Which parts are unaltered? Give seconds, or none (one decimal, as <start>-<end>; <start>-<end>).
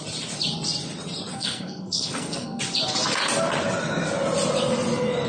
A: 0.0-1.3; 2.6-5.3